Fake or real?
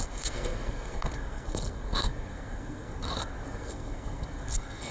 fake